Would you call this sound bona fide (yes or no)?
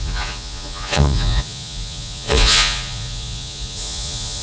no